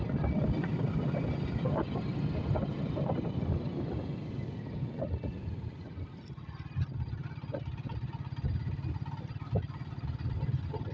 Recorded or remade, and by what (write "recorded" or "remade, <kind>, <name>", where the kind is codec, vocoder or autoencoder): recorded